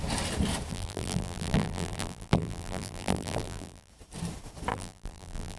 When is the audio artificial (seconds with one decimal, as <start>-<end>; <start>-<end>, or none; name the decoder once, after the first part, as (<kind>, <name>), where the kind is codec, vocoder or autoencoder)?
0.7-3.9 (vocoder, BigVGAN v2); 4.7-5.6